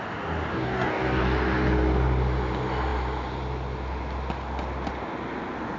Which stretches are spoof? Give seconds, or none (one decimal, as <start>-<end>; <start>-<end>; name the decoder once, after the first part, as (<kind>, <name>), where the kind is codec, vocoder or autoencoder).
0.5-1.2 (codec, DAC)